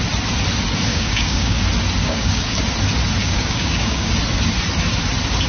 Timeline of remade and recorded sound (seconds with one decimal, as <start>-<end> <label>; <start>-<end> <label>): 0.0-0.9 recorded; 0.9-1.6 remade; 1.6-2.0 recorded; 2.0-2.6 remade; 2.6-3.2 recorded; 3.2-4.1 remade; 4.1-5.5 recorded